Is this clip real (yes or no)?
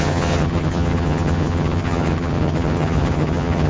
no